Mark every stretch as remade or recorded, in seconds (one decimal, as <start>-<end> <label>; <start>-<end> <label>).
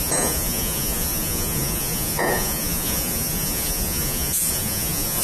0.0-5.2 remade